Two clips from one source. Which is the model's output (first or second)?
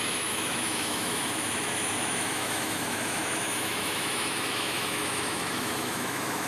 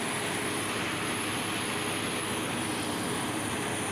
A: first